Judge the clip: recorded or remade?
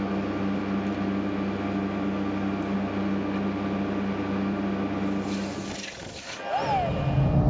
recorded